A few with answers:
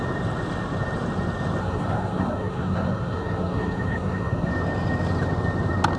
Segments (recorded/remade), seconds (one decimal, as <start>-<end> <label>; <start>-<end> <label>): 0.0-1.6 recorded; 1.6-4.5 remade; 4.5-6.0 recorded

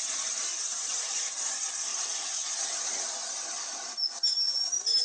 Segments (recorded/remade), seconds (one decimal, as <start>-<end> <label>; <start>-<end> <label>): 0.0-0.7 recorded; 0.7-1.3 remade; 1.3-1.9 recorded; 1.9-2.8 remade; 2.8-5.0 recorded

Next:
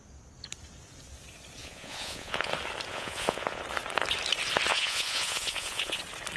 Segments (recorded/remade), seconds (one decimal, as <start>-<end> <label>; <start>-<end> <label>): 0.0-1.6 recorded; 1.6-2.5 remade; 2.5-2.9 recorded; 2.9-3.6 remade; 3.6-4.7 recorded; 4.7-6.0 remade; 6.0-6.4 recorded

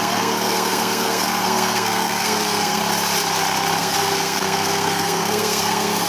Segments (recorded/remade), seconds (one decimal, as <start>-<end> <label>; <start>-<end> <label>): 0.0-2.8 remade; 2.8-3.8 recorded; 3.8-6.1 remade

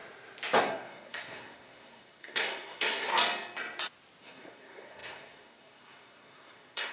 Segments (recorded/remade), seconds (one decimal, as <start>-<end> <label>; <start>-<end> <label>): 0.0-0.6 recorded; 0.6-3.1 remade; 3.1-4.2 recorded; 4.2-6.9 remade

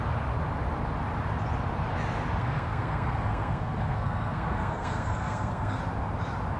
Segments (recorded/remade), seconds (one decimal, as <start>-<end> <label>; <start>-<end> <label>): 0.0-2.4 recorded; 2.4-5.8 remade; 5.8-6.6 recorded

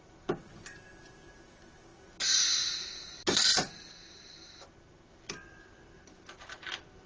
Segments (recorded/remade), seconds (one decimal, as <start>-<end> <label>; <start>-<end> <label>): 0.0-7.1 recorded

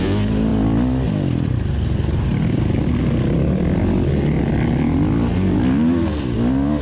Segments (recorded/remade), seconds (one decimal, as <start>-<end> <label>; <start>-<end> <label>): 0.0-6.8 recorded